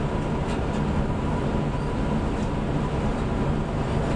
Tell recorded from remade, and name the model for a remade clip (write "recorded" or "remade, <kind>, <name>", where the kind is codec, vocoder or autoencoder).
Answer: recorded